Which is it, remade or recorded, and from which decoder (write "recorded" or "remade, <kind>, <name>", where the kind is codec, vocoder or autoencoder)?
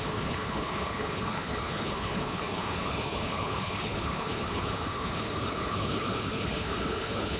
remade, codec, HILCodec